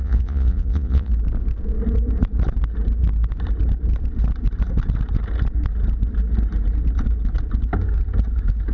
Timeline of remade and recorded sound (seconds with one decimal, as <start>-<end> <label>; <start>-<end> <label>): 0.0-1.1 remade; 1.1-8.7 recorded

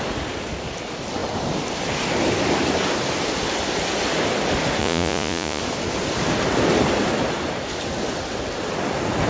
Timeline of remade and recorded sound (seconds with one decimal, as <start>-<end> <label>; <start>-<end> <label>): 0.0-4.8 recorded; 4.8-5.6 remade; 5.6-9.3 recorded

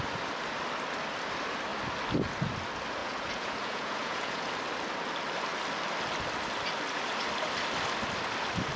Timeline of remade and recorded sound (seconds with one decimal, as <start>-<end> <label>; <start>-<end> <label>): 0.0-3.0 recorded; 3.0-4.5 remade; 4.5-8.8 recorded

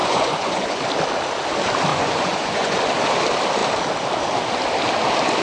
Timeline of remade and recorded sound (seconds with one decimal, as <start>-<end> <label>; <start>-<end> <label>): 0.0-0.8 remade; 0.8-1.9 recorded; 1.9-2.8 remade; 2.8-5.4 recorded

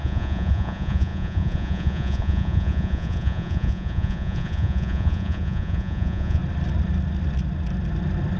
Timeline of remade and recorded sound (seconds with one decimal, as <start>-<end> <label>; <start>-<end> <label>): 0.0-6.4 remade; 6.4-8.4 recorded

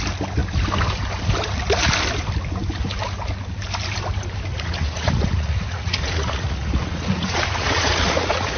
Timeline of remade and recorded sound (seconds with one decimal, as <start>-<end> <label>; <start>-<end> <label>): 0.0-4.5 recorded; 4.5-8.6 remade